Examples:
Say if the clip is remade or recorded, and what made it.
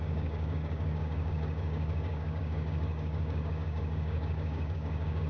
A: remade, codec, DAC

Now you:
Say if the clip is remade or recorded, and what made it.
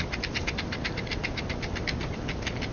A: recorded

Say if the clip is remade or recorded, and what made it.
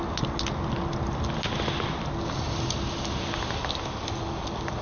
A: recorded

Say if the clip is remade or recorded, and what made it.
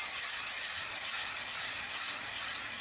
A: recorded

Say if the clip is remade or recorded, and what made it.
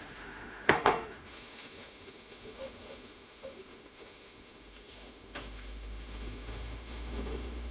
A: remade, autoencoder, DAC-VAE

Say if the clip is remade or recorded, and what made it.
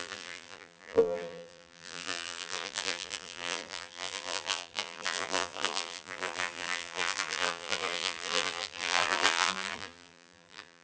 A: remade, vocoder, BigVGAN v2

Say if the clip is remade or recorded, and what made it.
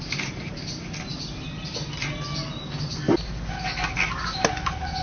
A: recorded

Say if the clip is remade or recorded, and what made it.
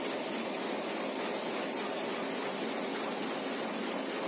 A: recorded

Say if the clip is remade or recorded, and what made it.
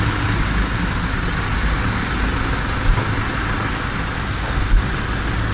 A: recorded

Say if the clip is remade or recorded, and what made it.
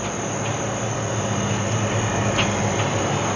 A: recorded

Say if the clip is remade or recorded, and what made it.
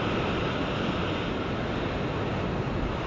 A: recorded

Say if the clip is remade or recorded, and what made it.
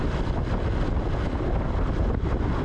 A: recorded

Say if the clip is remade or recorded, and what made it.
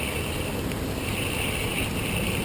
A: recorded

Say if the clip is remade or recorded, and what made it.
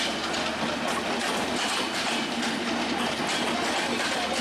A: recorded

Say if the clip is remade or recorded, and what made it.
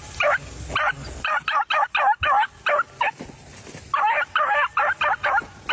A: recorded